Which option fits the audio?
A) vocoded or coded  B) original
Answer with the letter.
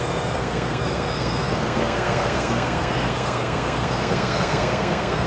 A